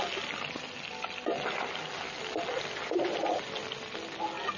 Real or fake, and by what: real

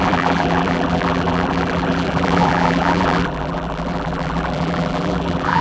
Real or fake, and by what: fake, vocoder, BigVGAN v2